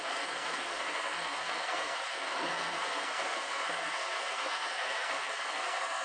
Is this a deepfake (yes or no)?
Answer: yes